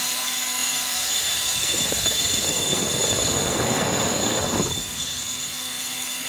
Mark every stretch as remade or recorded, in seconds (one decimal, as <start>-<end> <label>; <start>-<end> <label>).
0.0-6.3 remade